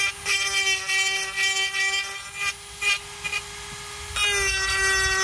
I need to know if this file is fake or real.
real